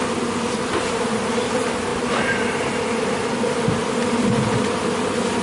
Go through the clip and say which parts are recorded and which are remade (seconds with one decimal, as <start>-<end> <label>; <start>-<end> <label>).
0.0-1.9 recorded; 1.9-5.4 remade